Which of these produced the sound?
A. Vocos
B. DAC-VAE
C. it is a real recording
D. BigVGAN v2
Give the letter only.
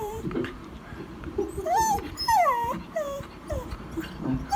D